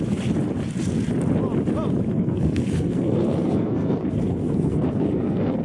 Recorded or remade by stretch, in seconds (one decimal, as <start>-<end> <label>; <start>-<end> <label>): 0.0-2.1 recorded; 2.1-5.6 remade